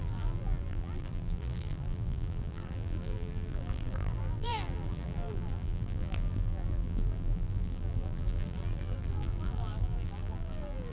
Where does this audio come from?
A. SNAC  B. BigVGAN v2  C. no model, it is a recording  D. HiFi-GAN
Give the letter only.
B